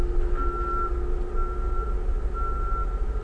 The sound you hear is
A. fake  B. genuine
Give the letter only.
B